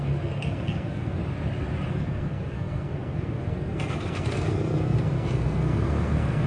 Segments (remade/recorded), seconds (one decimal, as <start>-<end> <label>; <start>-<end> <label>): 0.0-1.2 remade; 1.2-1.9 recorded; 1.9-6.5 remade